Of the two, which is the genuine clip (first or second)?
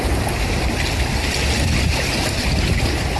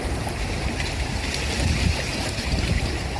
first